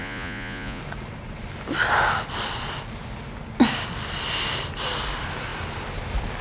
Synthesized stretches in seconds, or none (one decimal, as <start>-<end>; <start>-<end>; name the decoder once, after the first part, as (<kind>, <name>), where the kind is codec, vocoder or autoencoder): 0.0-0.8 (vocoder, Vocos)